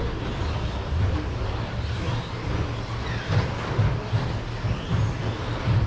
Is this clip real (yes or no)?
yes